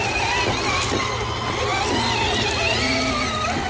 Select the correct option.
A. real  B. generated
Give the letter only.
A